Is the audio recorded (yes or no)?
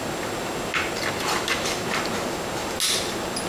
yes